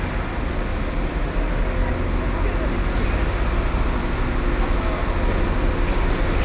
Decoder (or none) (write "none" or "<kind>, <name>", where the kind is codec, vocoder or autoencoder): none